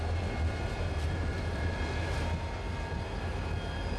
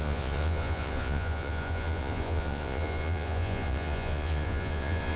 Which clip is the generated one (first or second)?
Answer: second